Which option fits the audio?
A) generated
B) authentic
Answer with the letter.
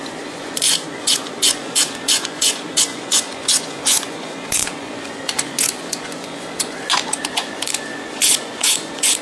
A